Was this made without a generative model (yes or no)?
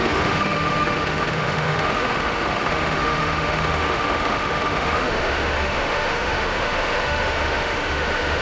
no